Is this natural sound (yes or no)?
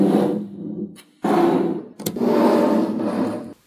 yes